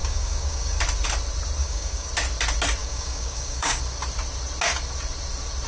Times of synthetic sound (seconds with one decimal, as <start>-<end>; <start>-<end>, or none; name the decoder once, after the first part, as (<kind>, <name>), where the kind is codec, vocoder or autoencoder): 0.0-0.8 (codec, DAC); 1.6-2.1; 2.8-3.8